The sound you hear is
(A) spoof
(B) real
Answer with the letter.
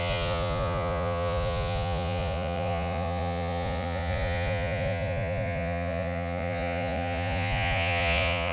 A